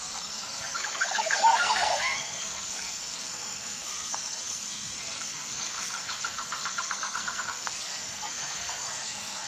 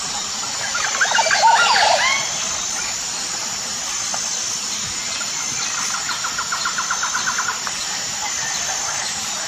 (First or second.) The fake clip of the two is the first